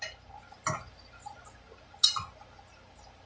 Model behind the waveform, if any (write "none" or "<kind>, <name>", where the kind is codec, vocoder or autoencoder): none